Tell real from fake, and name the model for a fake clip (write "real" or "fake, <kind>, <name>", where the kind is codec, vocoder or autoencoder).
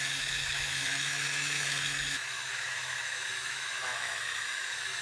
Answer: fake, autoencoder, DAC-VAE